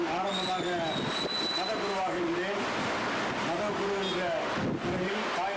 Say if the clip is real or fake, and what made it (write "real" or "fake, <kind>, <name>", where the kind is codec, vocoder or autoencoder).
real